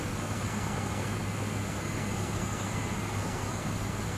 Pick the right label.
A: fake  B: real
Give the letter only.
A